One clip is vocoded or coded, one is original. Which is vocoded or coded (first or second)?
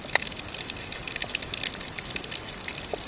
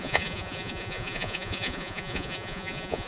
second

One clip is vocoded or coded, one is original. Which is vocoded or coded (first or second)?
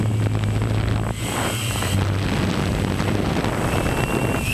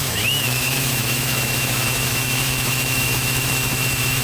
second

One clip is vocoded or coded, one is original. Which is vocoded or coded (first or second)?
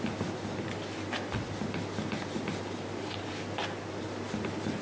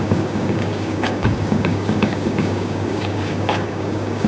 second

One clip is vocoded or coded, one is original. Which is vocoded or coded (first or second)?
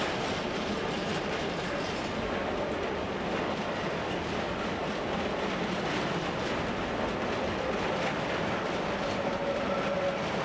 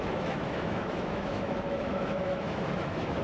second